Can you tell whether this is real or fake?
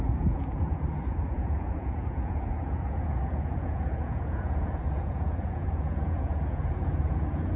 fake